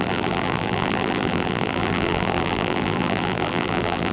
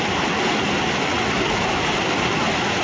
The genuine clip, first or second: second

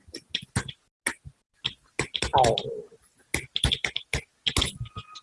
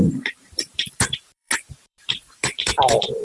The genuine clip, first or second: first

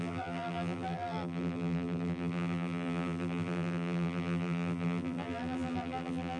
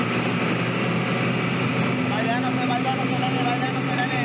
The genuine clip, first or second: second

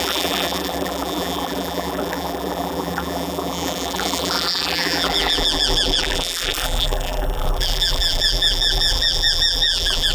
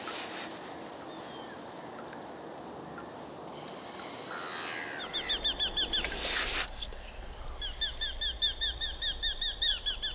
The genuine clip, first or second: second